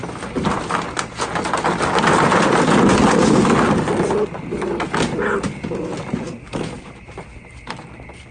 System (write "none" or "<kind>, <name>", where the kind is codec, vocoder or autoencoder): none